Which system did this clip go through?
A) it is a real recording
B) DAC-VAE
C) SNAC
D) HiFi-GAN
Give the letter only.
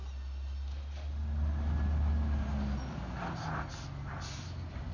A